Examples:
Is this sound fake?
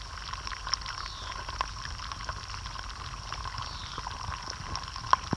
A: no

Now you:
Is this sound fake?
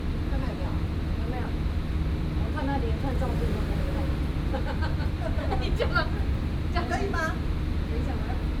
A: no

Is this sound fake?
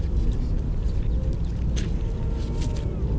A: no